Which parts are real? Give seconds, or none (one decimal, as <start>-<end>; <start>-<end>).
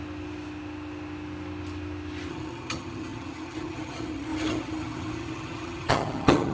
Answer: 0.0-2.3